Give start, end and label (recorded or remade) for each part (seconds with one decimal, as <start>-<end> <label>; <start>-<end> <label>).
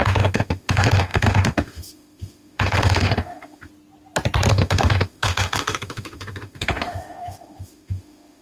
0.0-3.7 remade; 3.7-4.5 recorded; 4.5-8.4 remade